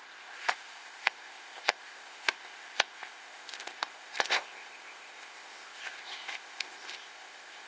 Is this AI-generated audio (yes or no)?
yes